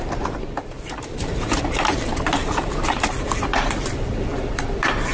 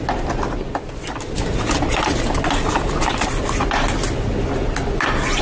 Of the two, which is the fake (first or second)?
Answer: first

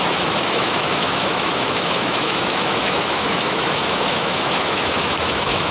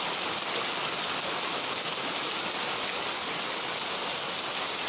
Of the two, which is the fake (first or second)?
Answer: first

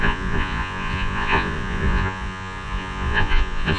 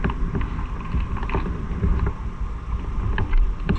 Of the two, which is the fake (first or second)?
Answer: first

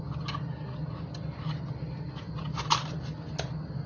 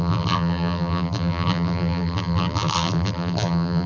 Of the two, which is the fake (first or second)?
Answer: second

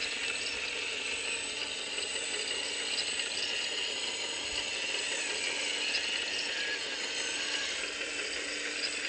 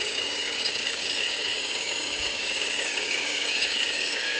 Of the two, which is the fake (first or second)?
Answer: second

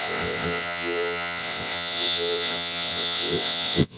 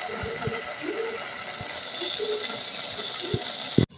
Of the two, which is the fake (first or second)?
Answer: first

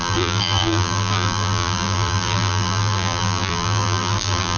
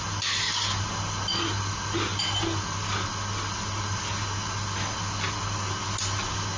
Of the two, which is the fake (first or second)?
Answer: first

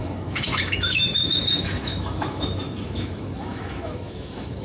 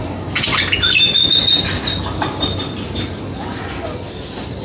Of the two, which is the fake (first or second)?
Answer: first